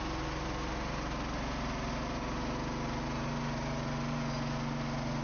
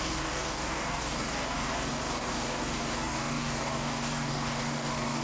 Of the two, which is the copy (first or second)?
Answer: second